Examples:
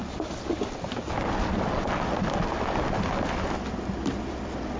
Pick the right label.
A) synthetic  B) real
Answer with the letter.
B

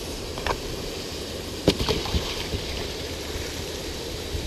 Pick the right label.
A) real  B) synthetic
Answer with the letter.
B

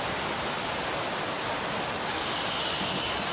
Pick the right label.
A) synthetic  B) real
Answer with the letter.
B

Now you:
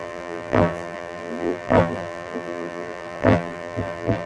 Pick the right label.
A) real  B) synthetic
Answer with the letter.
B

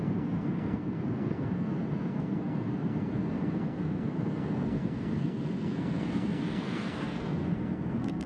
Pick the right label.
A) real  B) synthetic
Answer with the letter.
B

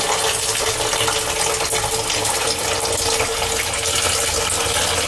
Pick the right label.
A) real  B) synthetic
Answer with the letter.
A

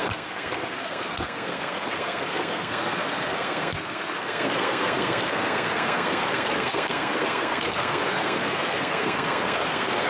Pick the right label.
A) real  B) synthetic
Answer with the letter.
B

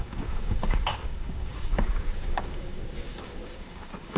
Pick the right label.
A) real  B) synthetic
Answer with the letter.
B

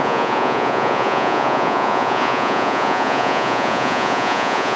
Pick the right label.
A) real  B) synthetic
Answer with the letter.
B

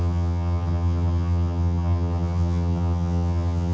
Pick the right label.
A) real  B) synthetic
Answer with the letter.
B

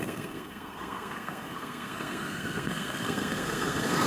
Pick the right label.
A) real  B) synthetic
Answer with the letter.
B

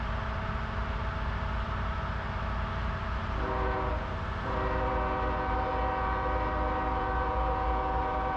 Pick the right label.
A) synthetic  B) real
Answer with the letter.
B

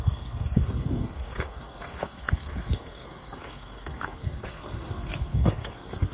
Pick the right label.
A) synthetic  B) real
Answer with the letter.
A